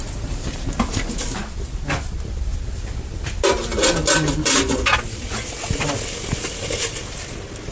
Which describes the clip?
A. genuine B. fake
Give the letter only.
A